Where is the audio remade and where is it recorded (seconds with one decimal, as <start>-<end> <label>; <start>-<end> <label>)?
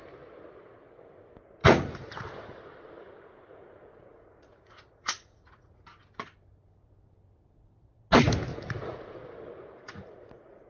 0.0-1.6 recorded; 1.6-5.8 remade; 5.8-8.5 recorded; 8.5-10.7 remade